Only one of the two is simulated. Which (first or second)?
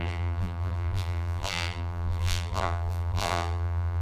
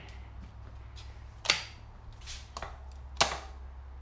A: first